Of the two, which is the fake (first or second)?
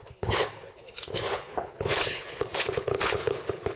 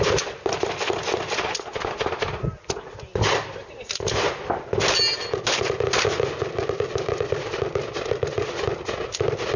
first